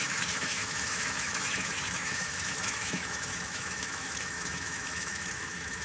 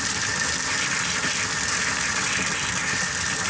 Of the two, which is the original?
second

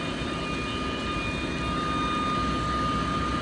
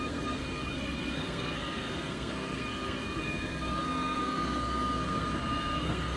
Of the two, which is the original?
first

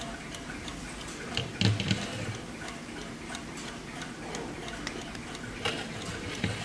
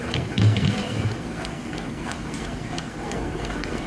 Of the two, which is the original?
first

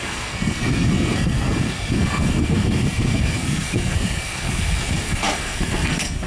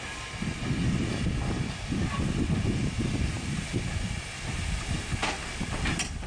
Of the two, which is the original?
second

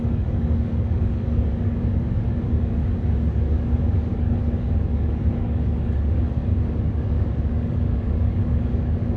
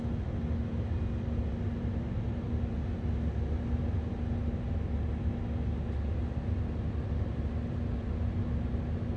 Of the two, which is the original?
second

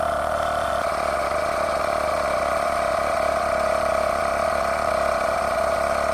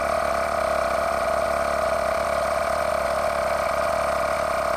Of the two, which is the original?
second